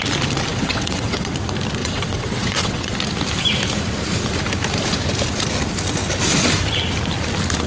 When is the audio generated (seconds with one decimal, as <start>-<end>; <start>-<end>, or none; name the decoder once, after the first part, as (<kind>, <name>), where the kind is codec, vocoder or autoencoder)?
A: 0.5-1.3 (vocoder, WaveNeXt); 1.8-2.9